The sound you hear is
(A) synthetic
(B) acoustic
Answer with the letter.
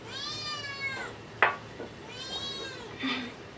B